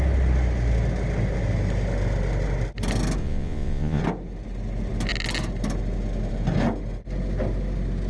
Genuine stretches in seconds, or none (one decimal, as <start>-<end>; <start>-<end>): 0.0-3.2; 4.0-8.1

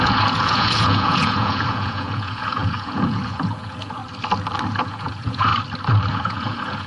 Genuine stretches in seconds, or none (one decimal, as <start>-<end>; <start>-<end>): 4.0-4.8; 5.5-6.1

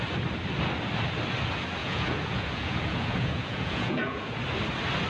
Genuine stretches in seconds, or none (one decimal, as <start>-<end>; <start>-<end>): 0.0-1.8; 4.3-5.1

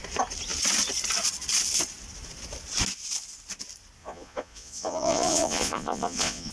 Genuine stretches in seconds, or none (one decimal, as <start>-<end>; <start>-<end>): 0.0-4.0